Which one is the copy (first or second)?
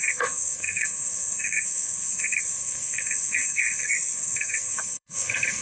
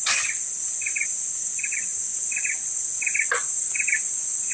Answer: first